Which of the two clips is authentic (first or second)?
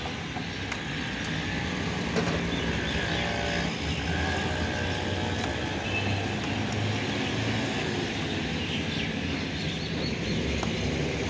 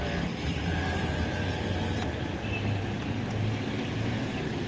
first